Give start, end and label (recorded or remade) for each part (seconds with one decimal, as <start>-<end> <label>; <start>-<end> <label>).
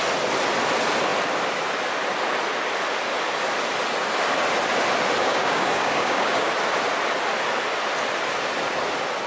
0.0-5.2 recorded; 5.2-6.5 remade; 6.5-9.3 recorded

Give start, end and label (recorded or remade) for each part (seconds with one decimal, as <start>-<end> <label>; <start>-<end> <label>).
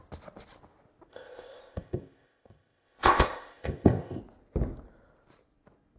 0.0-1.1 recorded; 1.1-4.2 remade; 4.2-6.0 recorded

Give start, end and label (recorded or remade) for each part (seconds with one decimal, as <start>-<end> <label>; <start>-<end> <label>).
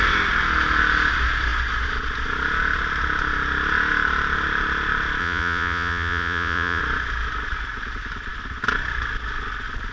0.0-5.2 recorded; 5.2-6.8 remade; 6.8-9.9 recorded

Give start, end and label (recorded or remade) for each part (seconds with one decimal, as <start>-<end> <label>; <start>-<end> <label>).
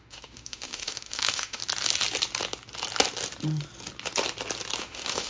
0.0-1.6 remade; 1.6-4.8 recorded; 4.8-5.3 remade